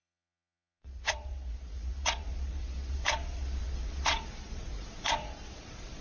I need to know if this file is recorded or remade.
remade